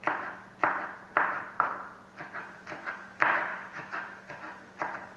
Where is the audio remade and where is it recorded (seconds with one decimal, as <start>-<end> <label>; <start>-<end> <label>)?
0.0-3.5 recorded; 3.5-4.3 remade; 4.3-5.2 recorded